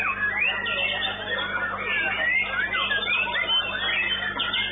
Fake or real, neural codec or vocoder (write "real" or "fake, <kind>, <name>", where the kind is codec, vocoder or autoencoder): real